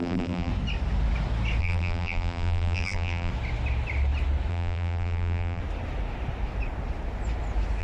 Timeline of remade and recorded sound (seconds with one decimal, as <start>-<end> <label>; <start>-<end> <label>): 0.0-0.5 remade; 0.5-1.6 recorded; 1.6-3.3 remade; 3.3-4.5 recorded; 4.5-5.6 remade; 5.6-7.8 recorded